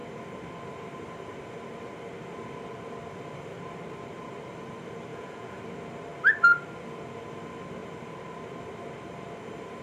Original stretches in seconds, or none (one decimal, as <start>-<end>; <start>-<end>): 0.0-5.1; 5.6-9.8

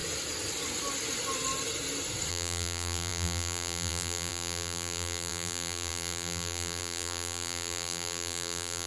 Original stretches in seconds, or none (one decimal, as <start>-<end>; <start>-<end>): 0.0-2.3

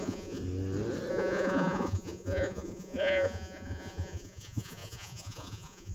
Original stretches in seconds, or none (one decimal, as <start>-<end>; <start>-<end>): 0.4-1.1

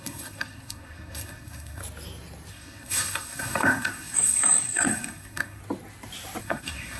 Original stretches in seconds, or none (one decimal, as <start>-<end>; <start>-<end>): 1.8-2.5; 5.6-6.4

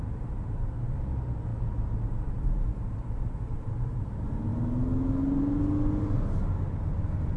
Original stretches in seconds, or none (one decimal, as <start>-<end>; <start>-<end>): 0.0-7.4

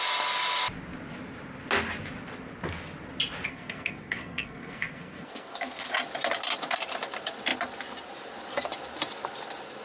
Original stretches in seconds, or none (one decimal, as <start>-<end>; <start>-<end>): 0.0-3.5; 5.9-9.8

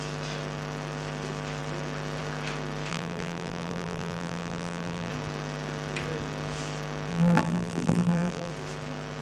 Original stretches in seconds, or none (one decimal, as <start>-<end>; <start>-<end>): 0.0-2.9; 5.1-7.1; 8.5-9.2